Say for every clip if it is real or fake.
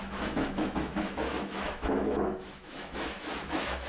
fake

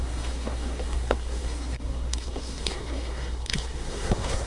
fake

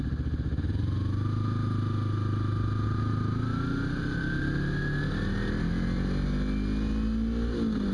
real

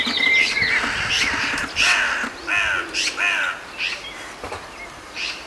real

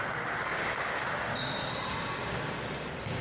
real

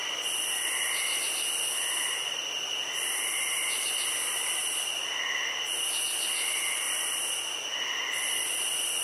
real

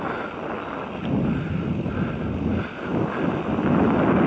real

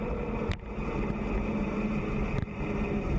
real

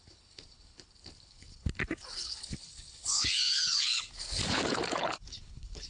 fake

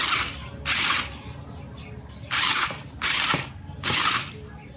real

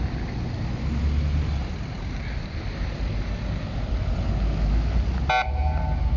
real